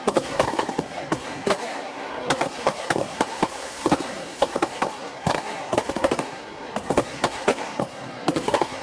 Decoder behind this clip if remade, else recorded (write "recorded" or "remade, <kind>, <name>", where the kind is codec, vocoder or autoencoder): remade, codec, SNAC